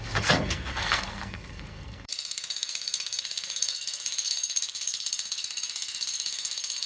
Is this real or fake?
fake